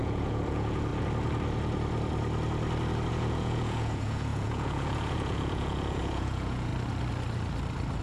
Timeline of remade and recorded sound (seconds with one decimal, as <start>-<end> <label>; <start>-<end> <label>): 0.0-0.9 remade; 0.9-3.1 recorded; 3.1-6.7 remade; 6.7-8.0 recorded